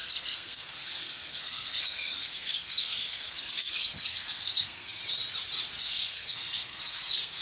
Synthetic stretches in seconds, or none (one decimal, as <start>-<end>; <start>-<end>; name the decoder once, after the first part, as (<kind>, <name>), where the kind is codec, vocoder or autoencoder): 0.0-5.0 (codec, SNAC); 5.8-7.4